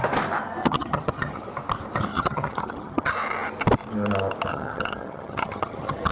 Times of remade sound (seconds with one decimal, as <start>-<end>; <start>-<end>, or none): 0.6-1.5; 2.1-3.1; 4.5-6.1